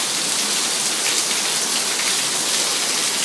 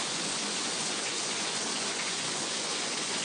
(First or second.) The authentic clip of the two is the first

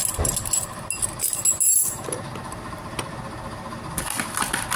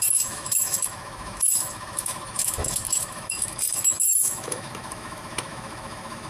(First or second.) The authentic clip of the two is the first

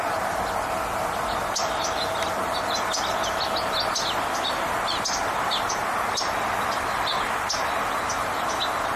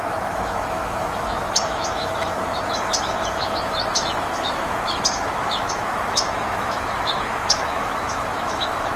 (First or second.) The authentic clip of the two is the first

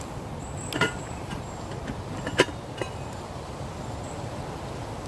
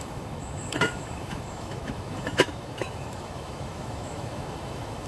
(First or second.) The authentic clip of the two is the first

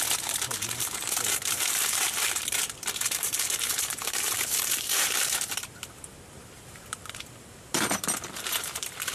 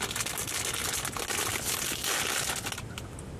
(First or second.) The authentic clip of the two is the second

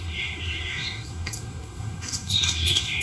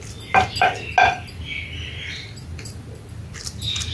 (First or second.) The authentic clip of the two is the second